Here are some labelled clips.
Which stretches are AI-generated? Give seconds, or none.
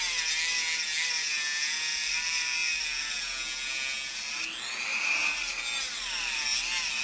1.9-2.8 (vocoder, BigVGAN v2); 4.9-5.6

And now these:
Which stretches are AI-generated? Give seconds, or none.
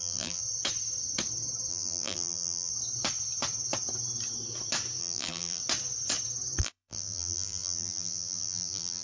0.0-0.4 (vocoder, BigVGAN v2); 1.7-2.7; 5.0-5.6; 6.6-9.0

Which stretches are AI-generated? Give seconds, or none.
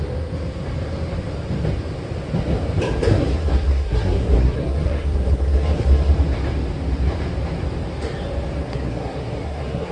3.1-6.1 (codec, SNAC); 8.6-9.9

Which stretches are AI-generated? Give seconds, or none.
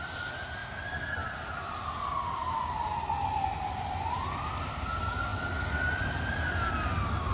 none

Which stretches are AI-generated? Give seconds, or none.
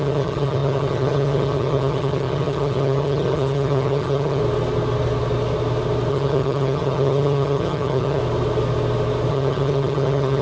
0.0-4.4 (vocoder, HiFi-GAN); 6.1-8.2; 9.3-10.4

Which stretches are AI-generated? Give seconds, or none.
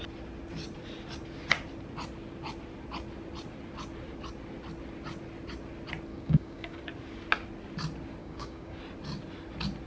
6.1-6.8 (codec, DAC); 8.2-8.8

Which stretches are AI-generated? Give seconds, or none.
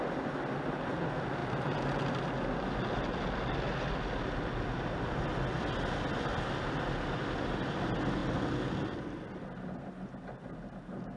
none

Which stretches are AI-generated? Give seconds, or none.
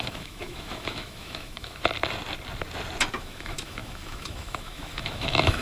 0.0-1.8 (autoencoder, DAC-VAE); 3.2-5.6